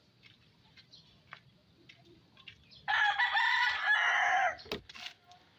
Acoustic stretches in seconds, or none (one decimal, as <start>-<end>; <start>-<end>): 0.0-5.6